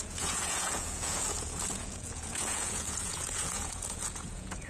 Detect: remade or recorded remade